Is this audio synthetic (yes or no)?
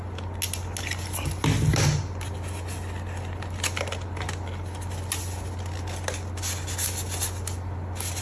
no